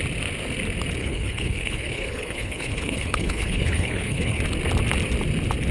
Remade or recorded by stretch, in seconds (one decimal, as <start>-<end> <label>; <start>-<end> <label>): 0.0-1.0 recorded; 1.0-4.4 remade; 4.4-5.7 recorded